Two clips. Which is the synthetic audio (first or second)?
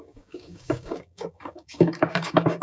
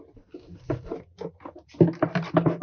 first